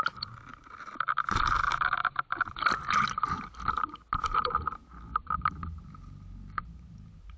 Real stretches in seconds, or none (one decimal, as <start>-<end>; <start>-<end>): 0.0-7.4